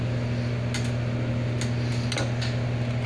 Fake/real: real